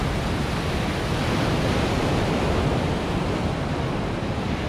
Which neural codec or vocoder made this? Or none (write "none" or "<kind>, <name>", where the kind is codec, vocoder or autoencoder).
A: none